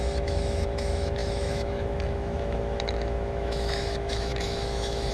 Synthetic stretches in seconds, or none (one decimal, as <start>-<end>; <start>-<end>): 0.0-5.1